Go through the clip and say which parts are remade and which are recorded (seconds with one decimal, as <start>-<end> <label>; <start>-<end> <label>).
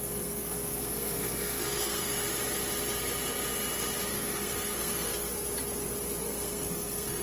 0.0-2.3 remade; 2.3-4.1 recorded; 4.1-5.3 remade; 5.3-6.2 recorded; 6.2-7.2 remade